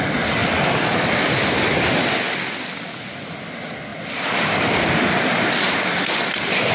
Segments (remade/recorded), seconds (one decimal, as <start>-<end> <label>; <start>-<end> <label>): 0.0-6.7 recorded